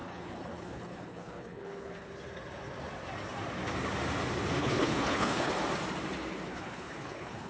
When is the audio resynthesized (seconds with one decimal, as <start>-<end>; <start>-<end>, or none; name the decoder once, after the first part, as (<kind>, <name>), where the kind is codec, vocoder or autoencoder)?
0.0-2.1 (codec, HILCodec); 4.6-5.5; 6.5-7.5